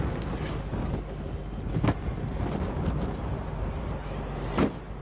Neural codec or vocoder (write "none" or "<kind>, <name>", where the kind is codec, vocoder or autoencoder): none